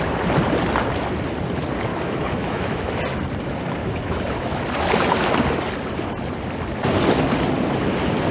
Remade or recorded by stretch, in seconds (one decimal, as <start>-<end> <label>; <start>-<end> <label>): 0.0-1.9 recorded; 1.9-2.9 remade; 2.9-3.8 recorded; 3.8-4.6 remade; 4.6-8.3 recorded